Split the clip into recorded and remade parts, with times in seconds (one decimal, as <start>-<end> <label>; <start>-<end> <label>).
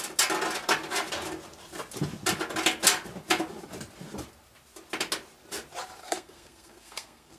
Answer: 0.0-6.0 recorded; 6.0-7.4 remade